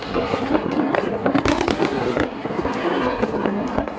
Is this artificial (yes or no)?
yes